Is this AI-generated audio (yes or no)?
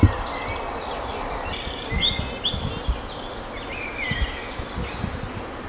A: no